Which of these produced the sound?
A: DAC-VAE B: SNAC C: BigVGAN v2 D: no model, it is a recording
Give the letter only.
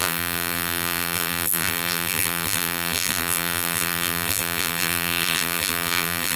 C